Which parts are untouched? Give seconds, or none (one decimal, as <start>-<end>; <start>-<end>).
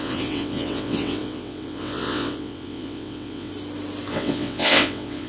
3.5-4.1